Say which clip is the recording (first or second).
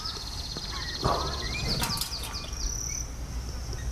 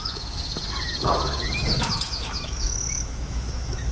first